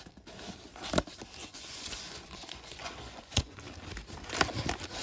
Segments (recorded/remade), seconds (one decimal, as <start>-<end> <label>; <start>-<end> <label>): 0.0-1.4 recorded; 1.4-3.6 remade; 3.6-5.0 recorded